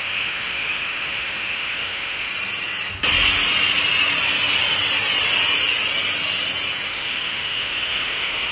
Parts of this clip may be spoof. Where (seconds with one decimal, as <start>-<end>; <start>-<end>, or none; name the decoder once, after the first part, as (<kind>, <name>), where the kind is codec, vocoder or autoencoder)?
0.0-2.3 (autoencoder, DAC-VAE); 6.9-8.5